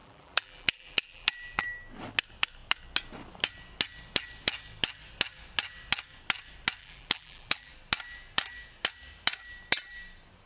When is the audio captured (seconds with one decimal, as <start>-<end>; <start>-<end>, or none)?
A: 1.6-6.8; 7.7-10.5